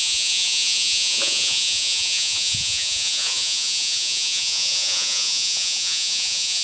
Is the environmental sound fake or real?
fake